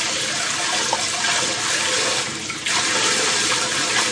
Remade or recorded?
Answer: recorded